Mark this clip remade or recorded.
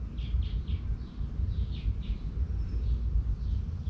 recorded